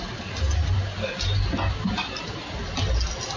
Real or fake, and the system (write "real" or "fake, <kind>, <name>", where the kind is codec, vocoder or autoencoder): real